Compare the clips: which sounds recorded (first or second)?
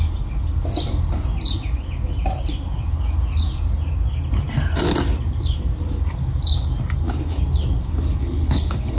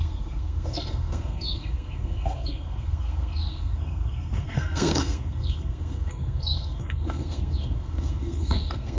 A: first